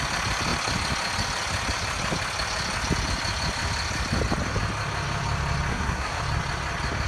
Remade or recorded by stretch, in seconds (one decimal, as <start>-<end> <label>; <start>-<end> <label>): 0.0-5.7 recorded; 5.7-6.2 remade; 6.2-7.1 recorded